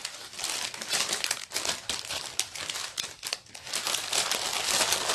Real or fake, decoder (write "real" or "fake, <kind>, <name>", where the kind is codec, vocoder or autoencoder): real